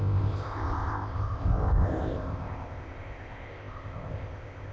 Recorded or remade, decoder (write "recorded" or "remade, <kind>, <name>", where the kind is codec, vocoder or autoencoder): remade, codec, ZipCodec